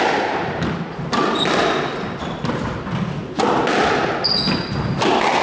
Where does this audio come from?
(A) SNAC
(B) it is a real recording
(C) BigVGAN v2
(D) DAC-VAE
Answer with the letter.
B